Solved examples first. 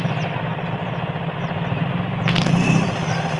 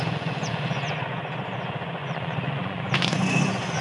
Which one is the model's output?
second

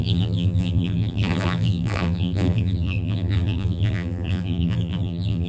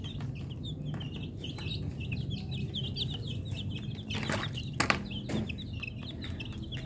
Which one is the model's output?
first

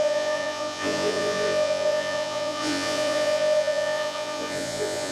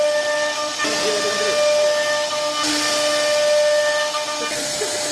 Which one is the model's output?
first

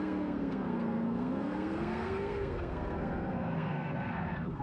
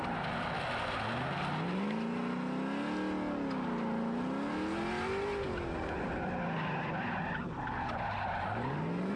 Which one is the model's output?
first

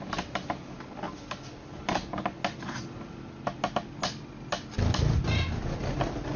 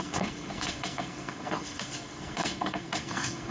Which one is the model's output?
second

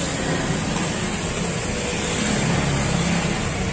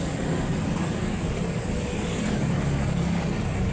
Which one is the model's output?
second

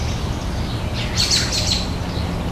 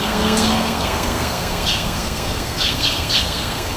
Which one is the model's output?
second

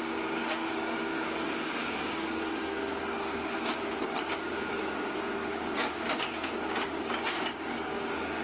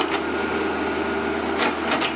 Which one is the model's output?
first